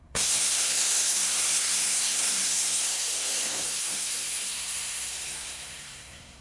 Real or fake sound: fake